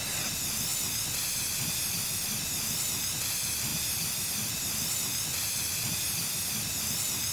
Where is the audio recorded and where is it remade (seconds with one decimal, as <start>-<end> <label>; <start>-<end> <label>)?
0.0-0.7 recorded; 0.7-3.1 remade; 3.1-3.7 recorded; 3.7-6.8 remade; 6.8-7.3 recorded